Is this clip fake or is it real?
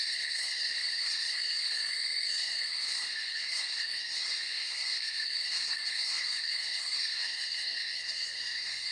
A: fake